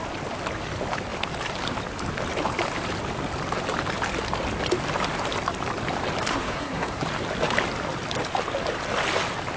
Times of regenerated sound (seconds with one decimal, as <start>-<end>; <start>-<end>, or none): 6.3-7.0